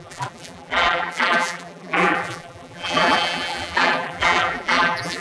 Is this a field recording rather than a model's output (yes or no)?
no